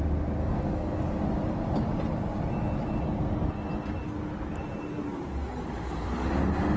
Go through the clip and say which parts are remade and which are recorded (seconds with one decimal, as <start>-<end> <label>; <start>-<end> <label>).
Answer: 0.0-0.4 recorded; 0.4-1.0 remade; 1.0-6.8 recorded